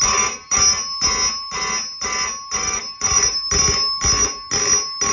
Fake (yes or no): no